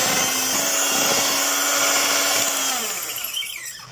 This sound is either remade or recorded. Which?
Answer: recorded